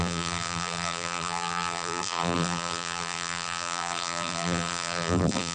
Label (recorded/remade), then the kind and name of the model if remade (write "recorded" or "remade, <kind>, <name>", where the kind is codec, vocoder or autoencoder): remade, vocoder, BigVGAN v2